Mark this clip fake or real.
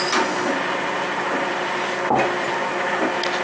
real